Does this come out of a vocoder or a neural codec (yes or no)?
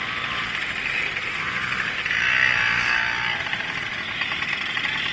no